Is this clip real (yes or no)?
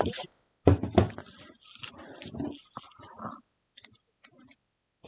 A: yes